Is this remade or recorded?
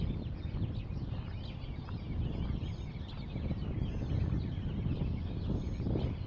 recorded